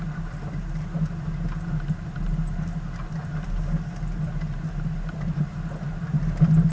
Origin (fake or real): real